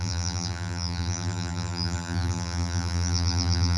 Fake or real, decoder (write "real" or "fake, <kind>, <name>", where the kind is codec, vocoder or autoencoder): fake, vocoder, BigVGAN v2